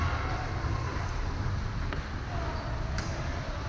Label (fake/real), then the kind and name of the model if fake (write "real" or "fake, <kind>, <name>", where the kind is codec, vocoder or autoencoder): real